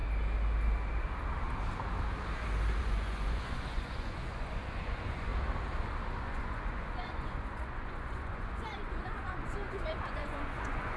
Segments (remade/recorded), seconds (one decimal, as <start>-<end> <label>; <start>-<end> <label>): 0.0-2.8 recorded; 2.8-5.3 remade; 5.3-6.2 recorded; 6.2-11.0 remade